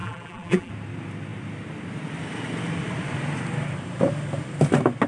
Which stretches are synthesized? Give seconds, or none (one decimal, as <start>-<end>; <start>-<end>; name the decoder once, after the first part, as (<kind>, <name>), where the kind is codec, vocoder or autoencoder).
0.0-0.7 (vocoder, BigVGAN v2)